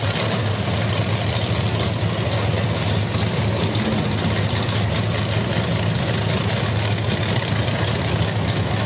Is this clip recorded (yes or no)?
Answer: yes